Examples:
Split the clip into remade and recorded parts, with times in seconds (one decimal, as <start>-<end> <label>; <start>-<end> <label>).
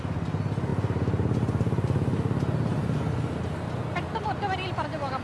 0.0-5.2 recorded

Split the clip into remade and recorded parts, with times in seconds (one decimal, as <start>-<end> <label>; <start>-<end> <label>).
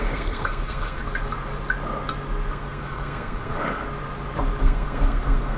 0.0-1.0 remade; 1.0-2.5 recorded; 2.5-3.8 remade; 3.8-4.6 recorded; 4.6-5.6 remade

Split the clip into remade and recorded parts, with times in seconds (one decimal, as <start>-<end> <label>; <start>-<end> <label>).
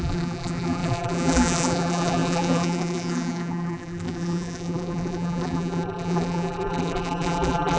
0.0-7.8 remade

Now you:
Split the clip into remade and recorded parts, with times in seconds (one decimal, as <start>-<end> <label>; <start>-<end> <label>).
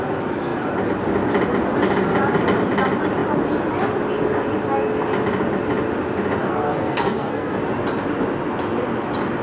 0.0-6.4 recorded; 6.4-7.6 remade; 7.6-9.4 recorded